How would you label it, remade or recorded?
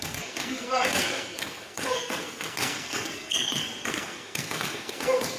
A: remade